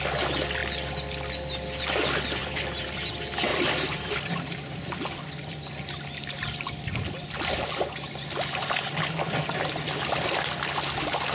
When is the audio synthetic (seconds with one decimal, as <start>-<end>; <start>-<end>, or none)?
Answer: 2.4-3.1; 3.5-7.8